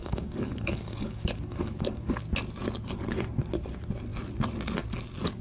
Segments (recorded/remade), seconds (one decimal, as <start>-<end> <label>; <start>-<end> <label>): 0.0-2.2 remade; 2.2-5.4 recorded